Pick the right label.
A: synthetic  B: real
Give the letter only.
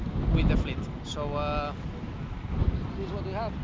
B